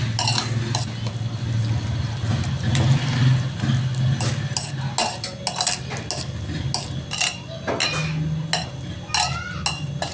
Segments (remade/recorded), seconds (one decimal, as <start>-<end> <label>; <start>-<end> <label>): 0.0-10.1 recorded